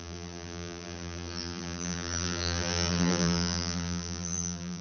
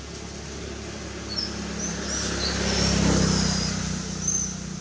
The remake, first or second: first